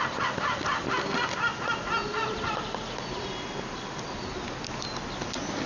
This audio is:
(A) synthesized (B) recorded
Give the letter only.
B